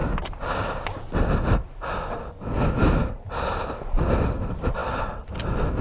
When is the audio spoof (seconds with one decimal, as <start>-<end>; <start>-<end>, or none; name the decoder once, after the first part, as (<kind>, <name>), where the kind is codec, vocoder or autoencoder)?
none